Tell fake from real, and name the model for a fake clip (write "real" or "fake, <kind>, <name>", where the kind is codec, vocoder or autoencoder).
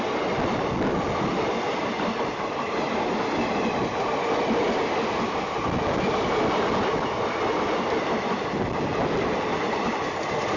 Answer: real